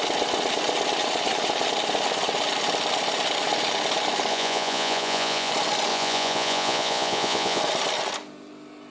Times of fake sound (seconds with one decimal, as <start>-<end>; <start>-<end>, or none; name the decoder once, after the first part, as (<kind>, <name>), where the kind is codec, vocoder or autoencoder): 4.3-5.5 (vocoder, Vocos); 5.9-7.6